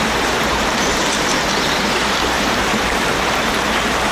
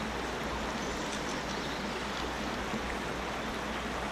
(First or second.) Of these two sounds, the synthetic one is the first